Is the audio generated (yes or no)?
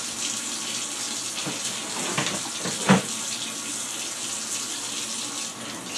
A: no